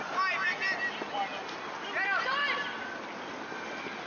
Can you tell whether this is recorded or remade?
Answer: recorded